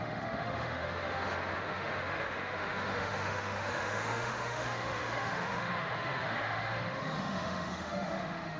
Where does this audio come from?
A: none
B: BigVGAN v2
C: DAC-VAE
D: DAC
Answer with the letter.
C